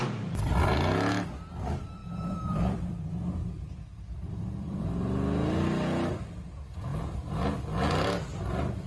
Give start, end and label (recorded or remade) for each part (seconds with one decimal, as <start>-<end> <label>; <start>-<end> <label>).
0.0-2.0 recorded; 2.0-4.8 remade; 4.8-6.9 recorded; 6.9-8.9 remade